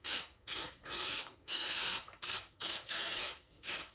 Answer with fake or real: fake